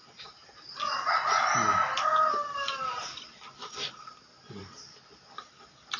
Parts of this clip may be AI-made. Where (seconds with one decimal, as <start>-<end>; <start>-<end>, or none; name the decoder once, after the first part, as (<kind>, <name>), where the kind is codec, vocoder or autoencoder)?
none